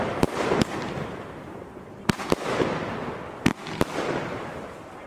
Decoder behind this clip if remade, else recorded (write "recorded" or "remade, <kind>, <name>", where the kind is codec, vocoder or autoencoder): recorded